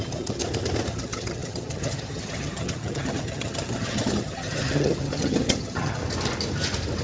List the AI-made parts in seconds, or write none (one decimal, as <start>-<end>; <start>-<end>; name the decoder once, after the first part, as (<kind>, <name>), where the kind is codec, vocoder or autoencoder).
0.0-0.4 (vocoder, HiFi-GAN); 0.9-6.0